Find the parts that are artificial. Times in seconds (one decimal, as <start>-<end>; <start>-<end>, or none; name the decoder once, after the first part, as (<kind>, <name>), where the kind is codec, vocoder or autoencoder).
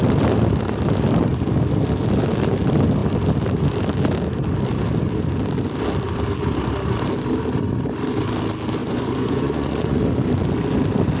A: 8.8-10.0 (vocoder, Vocos)